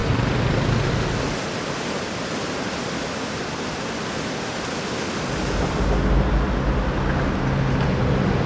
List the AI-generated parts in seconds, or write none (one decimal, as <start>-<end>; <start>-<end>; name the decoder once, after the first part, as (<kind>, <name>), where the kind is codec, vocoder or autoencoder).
none